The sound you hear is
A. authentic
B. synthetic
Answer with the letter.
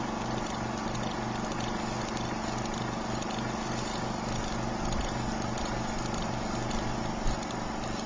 A